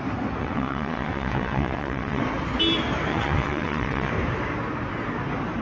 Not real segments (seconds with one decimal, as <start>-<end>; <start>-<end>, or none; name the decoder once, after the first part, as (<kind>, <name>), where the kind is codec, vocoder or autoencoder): 0.4-2.2 (vocoder, WaveNeXt); 3.1-4.1